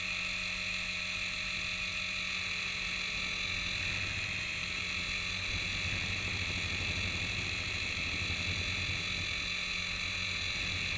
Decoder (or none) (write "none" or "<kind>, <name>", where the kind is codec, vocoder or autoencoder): none